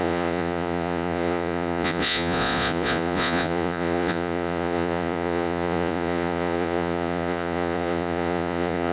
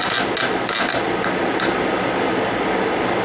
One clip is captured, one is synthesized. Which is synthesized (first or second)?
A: first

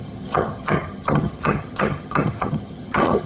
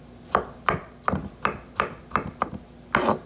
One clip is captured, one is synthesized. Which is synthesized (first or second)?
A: first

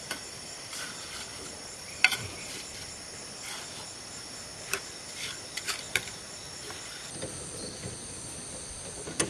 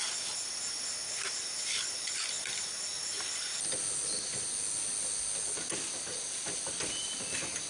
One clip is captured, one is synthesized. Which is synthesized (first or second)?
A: first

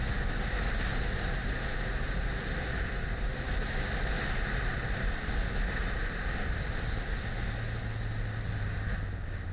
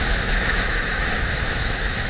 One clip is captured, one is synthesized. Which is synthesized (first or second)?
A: second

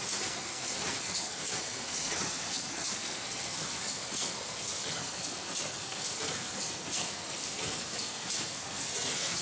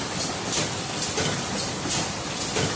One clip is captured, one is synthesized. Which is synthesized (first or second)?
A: first